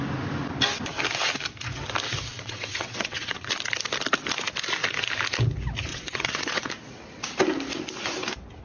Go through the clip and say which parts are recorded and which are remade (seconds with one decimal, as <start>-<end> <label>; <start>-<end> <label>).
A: 0.0-2.3 recorded; 2.3-3.5 remade; 3.5-5.9 recorded; 5.9-6.7 remade; 6.7-8.6 recorded